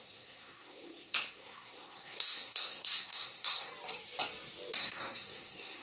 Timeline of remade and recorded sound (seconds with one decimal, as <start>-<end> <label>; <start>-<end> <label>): 0.0-3.7 remade; 3.7-4.8 recorded; 4.8-5.8 remade